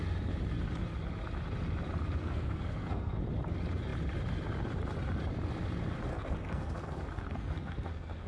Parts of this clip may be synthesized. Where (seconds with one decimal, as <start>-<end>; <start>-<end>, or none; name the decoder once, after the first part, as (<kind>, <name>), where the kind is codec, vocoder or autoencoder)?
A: 2.2-3.2 (codec, SNAC); 6.1-8.3